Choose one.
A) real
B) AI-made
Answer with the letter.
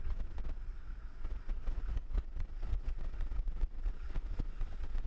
B